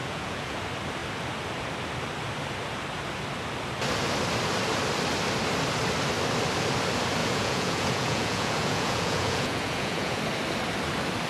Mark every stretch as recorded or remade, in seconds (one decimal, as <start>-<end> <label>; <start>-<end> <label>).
0.0-0.6 remade; 0.6-7.2 recorded; 7.2-10.2 remade; 10.2-11.3 recorded